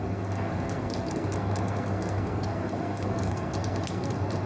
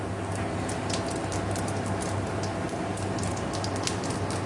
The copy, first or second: first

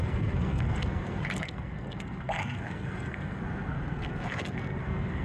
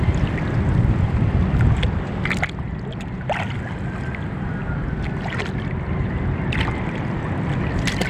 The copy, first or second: first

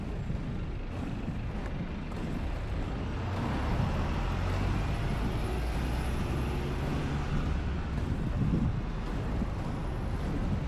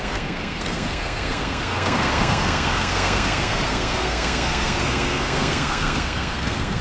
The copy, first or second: second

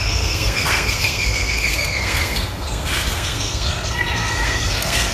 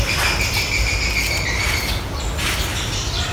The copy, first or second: first